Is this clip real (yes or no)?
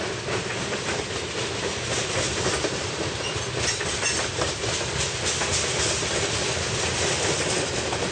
yes